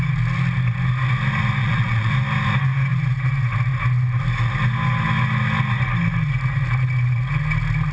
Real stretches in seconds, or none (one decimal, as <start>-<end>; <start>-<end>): 0.0-1.6; 2.1-7.9